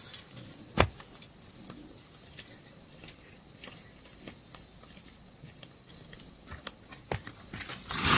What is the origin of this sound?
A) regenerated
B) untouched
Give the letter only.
B